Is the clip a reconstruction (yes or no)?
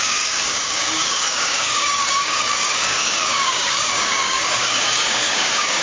yes